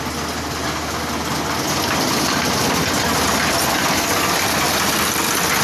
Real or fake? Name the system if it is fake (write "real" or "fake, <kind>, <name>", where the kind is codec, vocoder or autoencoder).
real